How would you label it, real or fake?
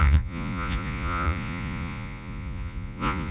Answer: fake